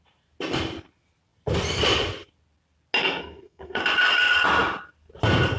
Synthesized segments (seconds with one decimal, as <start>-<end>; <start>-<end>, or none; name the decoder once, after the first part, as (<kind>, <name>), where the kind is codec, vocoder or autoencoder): 3.0-3.8 (codec, SNAC)